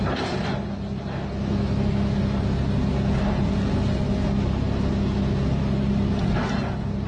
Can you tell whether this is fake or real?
real